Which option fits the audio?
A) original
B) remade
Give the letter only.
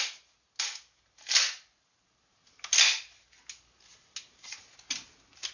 A